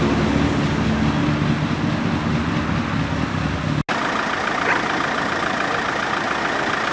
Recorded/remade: recorded